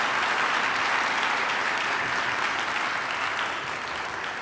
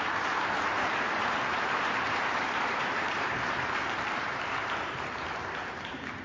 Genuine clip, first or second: first